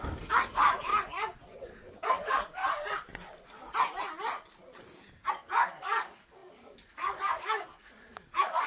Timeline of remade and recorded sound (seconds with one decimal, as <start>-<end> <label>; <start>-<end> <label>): 0.0-0.9 remade; 0.9-1.6 recorded; 1.6-2.6 remade; 2.6-5.3 recorded; 5.3-8.7 remade